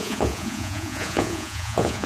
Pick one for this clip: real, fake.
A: fake